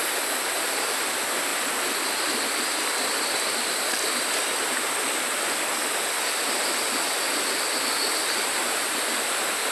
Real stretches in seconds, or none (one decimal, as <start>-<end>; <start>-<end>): 0.0-9.7